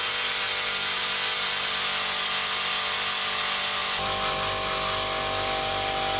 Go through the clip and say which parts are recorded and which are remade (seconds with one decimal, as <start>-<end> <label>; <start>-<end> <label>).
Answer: 0.0-6.2 recorded